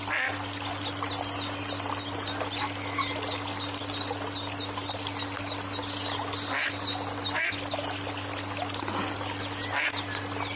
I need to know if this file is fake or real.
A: real